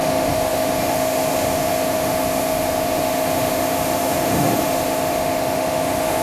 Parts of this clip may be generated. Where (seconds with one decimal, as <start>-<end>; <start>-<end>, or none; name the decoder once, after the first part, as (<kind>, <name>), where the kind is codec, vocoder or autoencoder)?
0.0-6.2 (autoencoder, DAC-VAE)